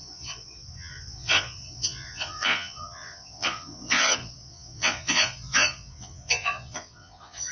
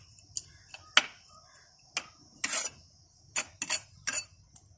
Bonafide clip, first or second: second